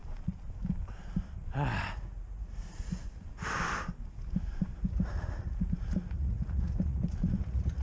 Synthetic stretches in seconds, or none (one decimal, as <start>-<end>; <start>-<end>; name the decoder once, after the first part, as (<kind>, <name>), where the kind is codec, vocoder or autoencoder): 1.9-3.0 (vocoder, Vocos); 4.1-7.8